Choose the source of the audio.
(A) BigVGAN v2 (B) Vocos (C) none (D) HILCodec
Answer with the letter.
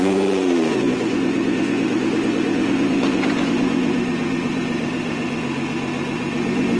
B